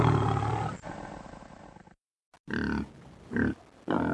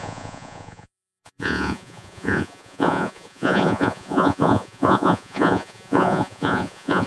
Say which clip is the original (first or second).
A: first